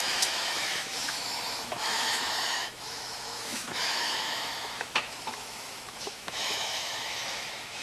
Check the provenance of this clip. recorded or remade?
remade